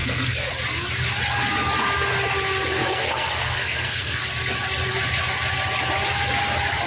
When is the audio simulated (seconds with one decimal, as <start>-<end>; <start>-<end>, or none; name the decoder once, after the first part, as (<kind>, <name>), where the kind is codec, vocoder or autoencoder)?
0.0-0.5 (codec, SNAC); 2.8-4.2

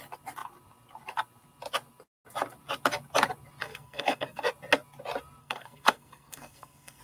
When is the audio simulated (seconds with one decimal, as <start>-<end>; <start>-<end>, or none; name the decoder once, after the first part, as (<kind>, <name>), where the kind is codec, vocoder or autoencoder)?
3.6-4.5 (codec, SNAC); 5.4-7.0

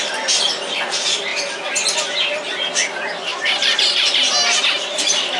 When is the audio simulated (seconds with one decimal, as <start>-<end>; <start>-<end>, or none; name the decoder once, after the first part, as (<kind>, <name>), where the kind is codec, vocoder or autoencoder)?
none

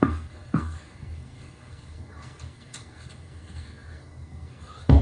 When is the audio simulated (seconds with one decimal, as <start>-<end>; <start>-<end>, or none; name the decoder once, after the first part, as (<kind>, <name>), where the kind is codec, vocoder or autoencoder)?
0.0-5.0 (codec, SNAC)

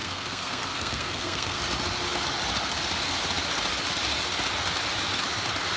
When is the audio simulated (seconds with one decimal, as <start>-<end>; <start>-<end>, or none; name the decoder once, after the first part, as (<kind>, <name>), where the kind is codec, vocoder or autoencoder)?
0.0-1.6 (codec, SNAC)

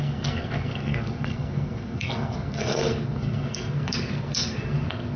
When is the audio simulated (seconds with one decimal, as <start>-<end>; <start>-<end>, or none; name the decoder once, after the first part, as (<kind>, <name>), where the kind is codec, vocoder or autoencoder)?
0.0-5.2 (codec, SNAC)